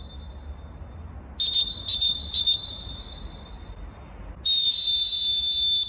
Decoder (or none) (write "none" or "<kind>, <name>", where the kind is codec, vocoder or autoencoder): none